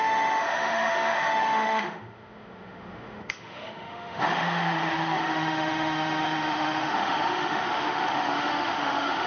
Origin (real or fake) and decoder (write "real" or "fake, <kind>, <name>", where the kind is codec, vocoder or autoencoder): fake, autoencoder, DAC-VAE